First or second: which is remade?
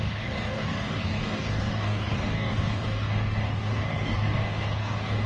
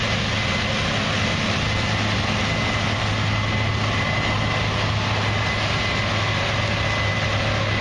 first